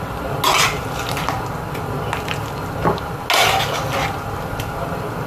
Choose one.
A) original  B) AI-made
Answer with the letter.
A